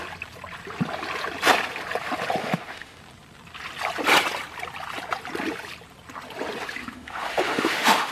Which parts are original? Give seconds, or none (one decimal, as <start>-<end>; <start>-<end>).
0.0-2.4; 3.0-6.8